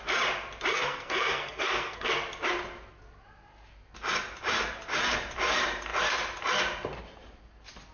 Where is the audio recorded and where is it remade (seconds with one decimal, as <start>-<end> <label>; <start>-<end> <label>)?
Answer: 0.0-0.7 recorded; 0.7-2.1 remade; 2.1-7.9 recorded